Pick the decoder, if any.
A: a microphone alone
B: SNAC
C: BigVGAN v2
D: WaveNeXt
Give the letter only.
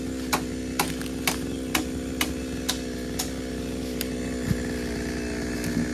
A